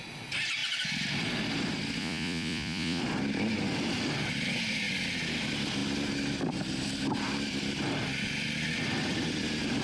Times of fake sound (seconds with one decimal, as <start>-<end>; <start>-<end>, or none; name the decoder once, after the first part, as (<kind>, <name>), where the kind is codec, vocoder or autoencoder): 2.0-3.0 (vocoder, Vocos)